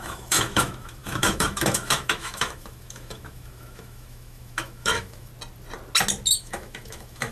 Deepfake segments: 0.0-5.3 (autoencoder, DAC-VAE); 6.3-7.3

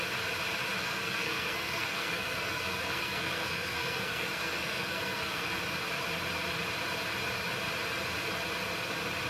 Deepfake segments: 0.8-5.6 (codec, SNAC)

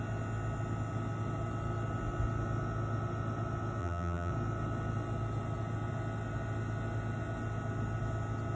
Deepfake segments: 3.8-4.3 (vocoder, BigVGAN v2)

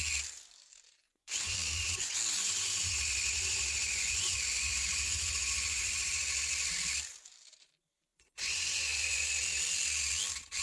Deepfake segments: 1.1-6.1 (vocoder, Vocos); 8.1-9.2

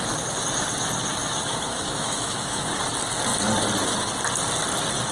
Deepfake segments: 1.1-2.7 (autoencoder, DAC-VAE)

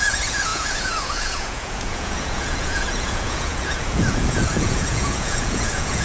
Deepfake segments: 0.0-6.0 (vocoder, Vocos)